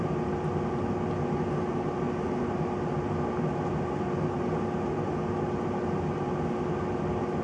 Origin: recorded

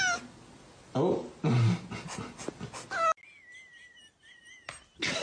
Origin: recorded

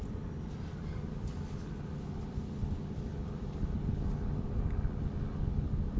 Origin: recorded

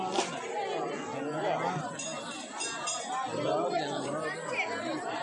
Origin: recorded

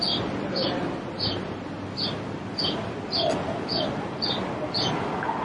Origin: recorded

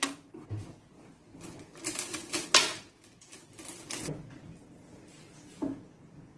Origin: recorded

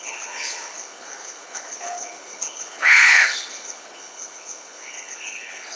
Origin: remade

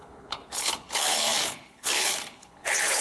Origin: remade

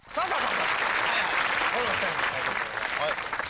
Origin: recorded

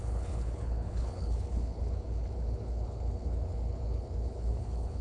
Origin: remade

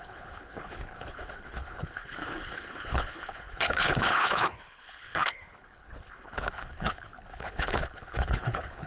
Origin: remade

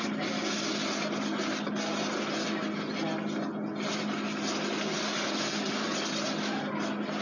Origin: recorded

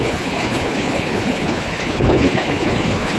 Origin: remade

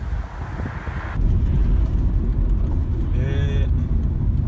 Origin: recorded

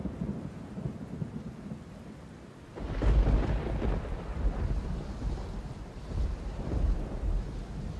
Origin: recorded